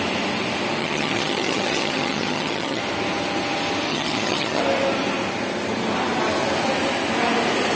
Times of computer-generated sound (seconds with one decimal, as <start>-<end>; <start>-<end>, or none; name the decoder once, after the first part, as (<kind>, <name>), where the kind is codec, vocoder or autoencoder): 0.8-2.8 (vocoder, HiFi-GAN); 3.9-4.6